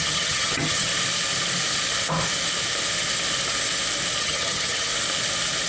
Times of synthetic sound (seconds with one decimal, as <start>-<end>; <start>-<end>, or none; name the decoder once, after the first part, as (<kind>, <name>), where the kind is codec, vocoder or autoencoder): 0.0-0.9 (vocoder, HiFi-GAN); 4.2-4.9